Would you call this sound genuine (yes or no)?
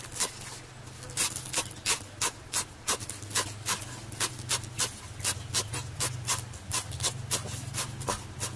yes